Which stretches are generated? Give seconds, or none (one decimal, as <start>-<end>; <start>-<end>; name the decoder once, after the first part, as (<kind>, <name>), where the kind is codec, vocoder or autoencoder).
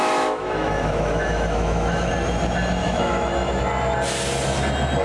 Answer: 0.0-2.1 (autoencoder, DAC-VAE); 2.8-3.6